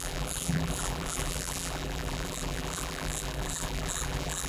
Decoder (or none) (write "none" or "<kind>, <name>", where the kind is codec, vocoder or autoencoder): vocoder, BigVGAN v2